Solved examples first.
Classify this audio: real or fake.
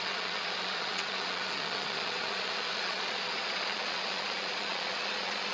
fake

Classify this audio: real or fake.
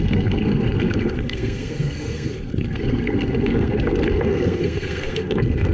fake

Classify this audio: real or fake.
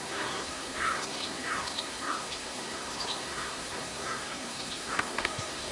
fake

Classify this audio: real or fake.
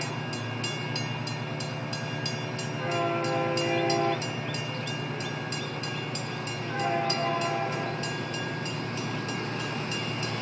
real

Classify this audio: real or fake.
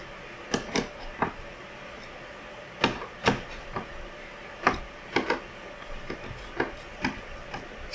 real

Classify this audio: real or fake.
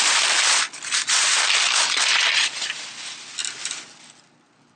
real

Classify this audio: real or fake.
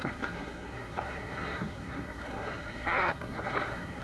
fake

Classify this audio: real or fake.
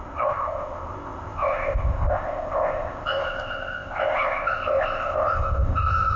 fake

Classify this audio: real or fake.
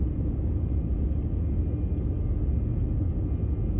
real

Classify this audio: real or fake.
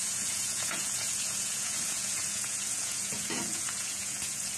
fake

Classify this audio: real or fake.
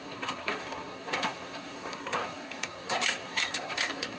fake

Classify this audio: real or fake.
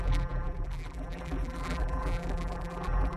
fake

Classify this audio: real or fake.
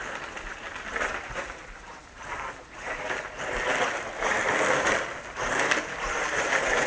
real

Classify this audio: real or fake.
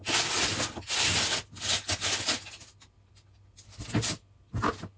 real